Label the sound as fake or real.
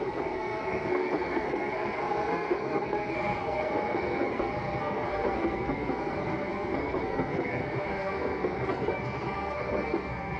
fake